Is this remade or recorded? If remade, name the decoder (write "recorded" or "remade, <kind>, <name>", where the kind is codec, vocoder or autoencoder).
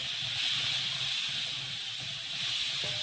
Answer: recorded